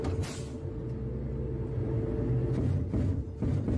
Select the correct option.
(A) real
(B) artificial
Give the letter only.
A